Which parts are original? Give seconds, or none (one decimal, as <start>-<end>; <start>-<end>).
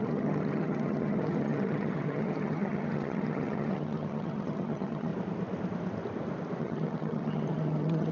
5.1-6.6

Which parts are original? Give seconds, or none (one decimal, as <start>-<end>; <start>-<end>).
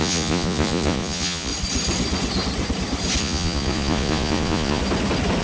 1.5-3.2; 4.8-5.4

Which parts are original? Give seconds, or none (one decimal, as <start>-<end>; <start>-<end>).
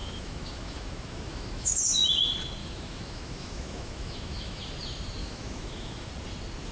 1.8-2.6; 4.6-5.2; 6.1-6.7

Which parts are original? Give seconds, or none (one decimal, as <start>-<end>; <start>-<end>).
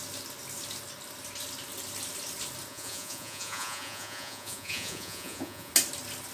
0.0-2.7; 5.7-6.3